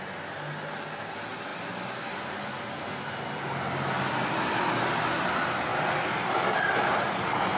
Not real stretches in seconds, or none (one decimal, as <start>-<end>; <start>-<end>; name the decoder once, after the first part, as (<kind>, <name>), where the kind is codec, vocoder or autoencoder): none